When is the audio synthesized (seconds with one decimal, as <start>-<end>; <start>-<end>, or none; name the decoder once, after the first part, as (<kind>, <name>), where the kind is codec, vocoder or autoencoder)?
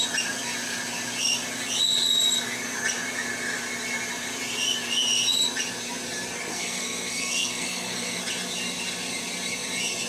6.5-8.2 (codec, SNAC)